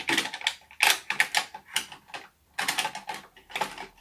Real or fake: real